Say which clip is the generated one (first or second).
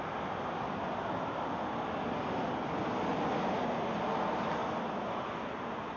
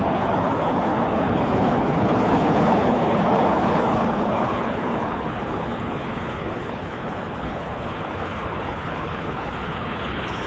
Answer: second